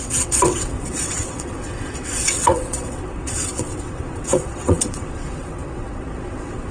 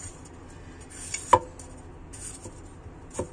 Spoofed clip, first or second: first